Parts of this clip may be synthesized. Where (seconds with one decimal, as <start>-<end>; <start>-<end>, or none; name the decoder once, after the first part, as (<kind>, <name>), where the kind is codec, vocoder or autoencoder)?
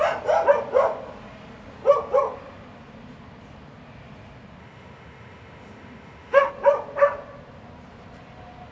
4.6-6.5 (autoencoder, DAC-VAE)